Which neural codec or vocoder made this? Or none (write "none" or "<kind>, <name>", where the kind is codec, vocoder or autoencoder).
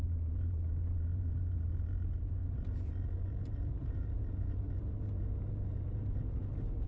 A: vocoder, BigVGAN v2